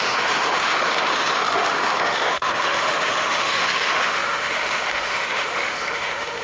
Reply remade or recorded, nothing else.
remade